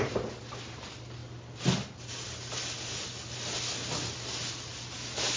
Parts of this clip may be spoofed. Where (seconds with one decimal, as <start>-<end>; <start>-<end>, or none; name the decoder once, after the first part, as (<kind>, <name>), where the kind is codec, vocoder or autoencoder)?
none